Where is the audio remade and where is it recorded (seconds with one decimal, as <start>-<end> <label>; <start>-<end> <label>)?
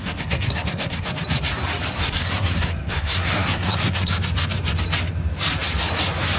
0.0-1.1 remade; 1.1-2.0 recorded; 2.0-4.1 remade; 4.1-6.4 recorded